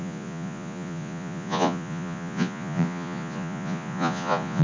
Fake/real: fake